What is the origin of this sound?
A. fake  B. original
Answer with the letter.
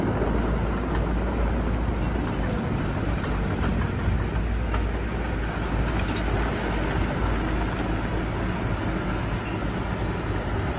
B